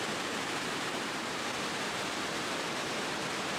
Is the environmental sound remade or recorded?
remade